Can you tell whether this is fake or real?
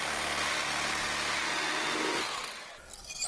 real